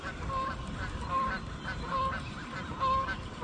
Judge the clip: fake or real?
real